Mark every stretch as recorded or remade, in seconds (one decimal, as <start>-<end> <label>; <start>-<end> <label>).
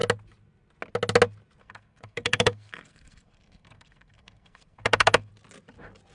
0.0-1.6 recorded; 1.6-5.3 remade; 5.3-6.1 recorded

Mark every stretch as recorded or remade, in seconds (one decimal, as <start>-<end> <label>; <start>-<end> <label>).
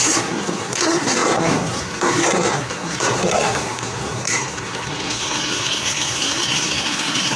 0.0-7.4 remade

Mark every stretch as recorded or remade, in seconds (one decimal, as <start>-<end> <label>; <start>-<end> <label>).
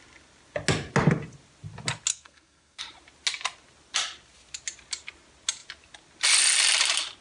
0.0-2.1 recorded; 2.1-2.8 remade; 2.8-7.2 recorded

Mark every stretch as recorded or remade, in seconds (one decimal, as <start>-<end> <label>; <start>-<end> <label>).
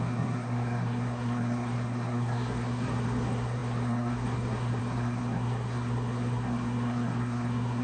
0.0-7.8 remade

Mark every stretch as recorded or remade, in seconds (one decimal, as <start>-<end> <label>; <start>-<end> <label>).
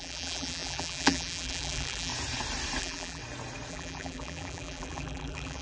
0.0-2.1 remade; 2.1-2.8 recorded; 2.8-3.2 remade; 3.2-3.7 recorded; 3.7-5.6 remade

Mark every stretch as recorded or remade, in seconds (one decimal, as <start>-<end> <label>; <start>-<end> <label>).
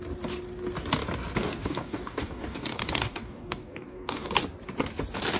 0.0-1.4 recorded; 1.4-4.3 remade; 4.3-5.4 recorded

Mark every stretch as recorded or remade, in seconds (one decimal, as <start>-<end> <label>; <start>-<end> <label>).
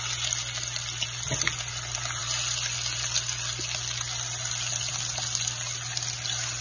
0.0-6.6 recorded